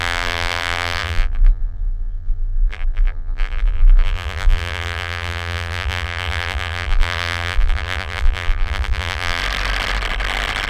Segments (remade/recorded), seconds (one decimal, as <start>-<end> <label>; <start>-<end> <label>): 0.0-9.4 remade; 9.4-10.7 recorded